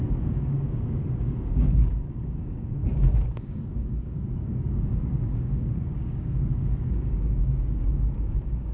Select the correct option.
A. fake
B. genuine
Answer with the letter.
A